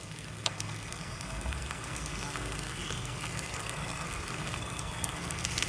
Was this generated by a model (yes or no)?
yes